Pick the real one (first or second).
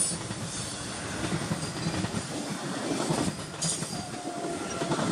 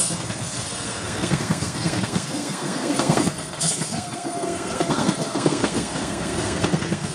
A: first